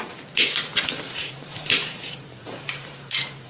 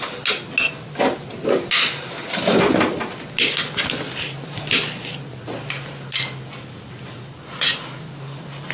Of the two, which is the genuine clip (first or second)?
second